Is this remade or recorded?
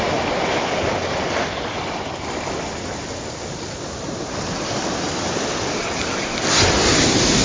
recorded